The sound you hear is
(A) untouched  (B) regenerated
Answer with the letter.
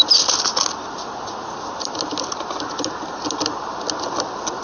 A